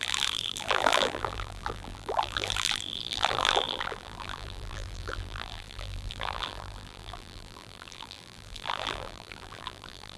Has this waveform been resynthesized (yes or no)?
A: yes